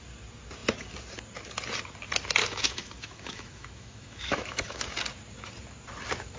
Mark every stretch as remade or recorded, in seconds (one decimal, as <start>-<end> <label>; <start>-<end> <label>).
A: 0.0-2.4 recorded; 2.4-4.9 remade; 4.9-6.4 recorded

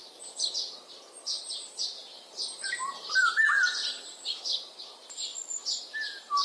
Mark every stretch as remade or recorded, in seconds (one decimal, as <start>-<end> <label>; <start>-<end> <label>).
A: 0.0-1.4 recorded; 1.4-6.4 remade

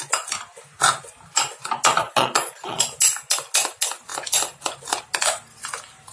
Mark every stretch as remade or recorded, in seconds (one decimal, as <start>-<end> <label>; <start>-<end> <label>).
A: 0.0-2.0 recorded; 2.0-2.8 remade; 2.8-6.1 recorded

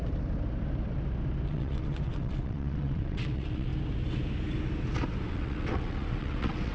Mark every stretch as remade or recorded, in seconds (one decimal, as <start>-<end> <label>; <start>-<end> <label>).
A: 0.0-1.5 recorded; 1.5-3.7 remade; 3.7-5.3 recorded; 5.3-6.7 remade

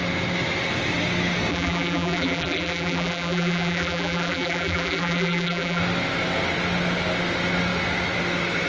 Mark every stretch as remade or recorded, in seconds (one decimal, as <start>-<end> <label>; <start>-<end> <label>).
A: 0.0-1.5 recorded; 1.5-5.8 remade; 5.8-8.7 recorded

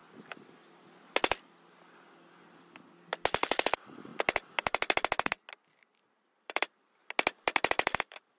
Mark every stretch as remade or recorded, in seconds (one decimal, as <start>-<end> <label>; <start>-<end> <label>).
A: 0.0-3.3 recorded; 3.3-4.1 remade; 4.1-6.5 recorded; 6.5-7.0 remade; 7.0-7.7 recorded; 7.7-8.4 remade

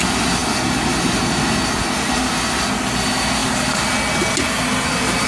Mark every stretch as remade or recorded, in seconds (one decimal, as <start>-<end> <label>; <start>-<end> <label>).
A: 0.0-3.4 recorded; 3.4-3.9 remade; 3.9-5.3 recorded

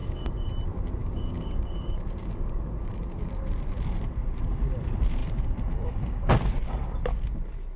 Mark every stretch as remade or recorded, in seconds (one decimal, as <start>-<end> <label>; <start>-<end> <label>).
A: 0.0-0.5 remade; 0.5-1.0 recorded; 1.0-3.3 remade; 3.3-7.8 recorded